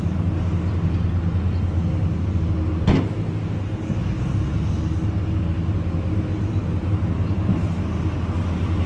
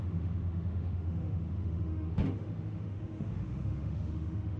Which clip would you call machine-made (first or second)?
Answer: second